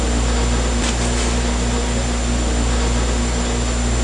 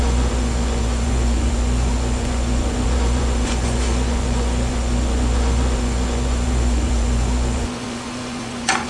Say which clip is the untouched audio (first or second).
first